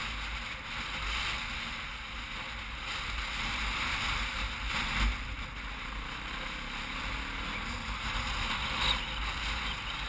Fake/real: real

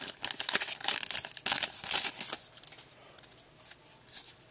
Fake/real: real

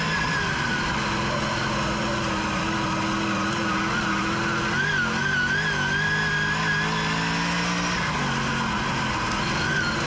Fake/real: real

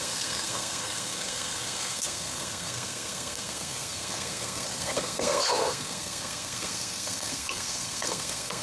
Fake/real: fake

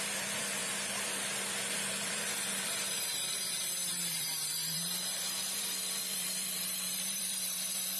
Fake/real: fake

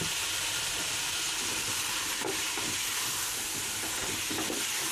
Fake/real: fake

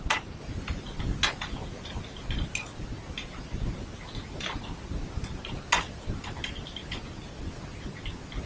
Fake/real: real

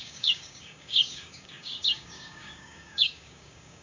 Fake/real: fake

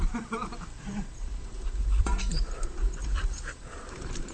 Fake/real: fake